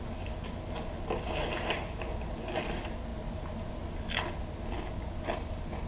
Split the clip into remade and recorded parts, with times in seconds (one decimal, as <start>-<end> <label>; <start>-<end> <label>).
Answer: 0.0-5.9 recorded